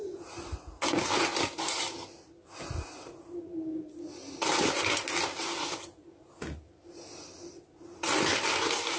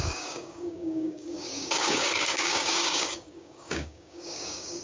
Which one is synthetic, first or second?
second